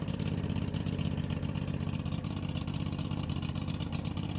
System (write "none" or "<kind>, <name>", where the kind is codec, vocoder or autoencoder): none